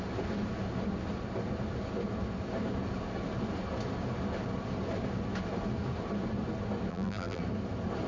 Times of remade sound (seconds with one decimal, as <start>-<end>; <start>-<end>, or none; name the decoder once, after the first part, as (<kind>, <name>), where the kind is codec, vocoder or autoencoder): 6.9-7.4 (vocoder, BigVGAN v2)